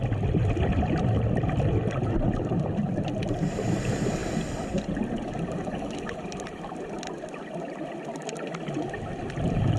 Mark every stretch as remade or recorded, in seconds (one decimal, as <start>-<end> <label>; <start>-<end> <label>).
0.0-9.8 recorded